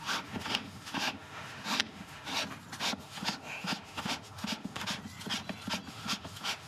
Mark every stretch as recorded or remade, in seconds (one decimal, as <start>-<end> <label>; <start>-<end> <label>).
0.0-2.3 remade; 2.3-2.8 recorded; 2.8-5.0 remade; 5.0-5.9 recorded; 5.9-6.7 remade